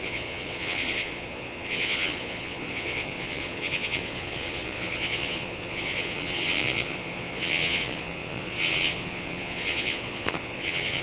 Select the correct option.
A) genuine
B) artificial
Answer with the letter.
B